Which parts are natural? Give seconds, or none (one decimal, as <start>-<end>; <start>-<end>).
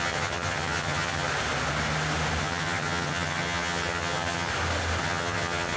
1.3-2.4; 4.5-5.0